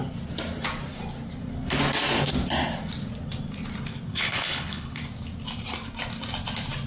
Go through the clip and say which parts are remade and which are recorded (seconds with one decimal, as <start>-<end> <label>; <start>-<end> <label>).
0.0-4.1 recorded; 4.1-5.0 remade; 5.0-6.9 recorded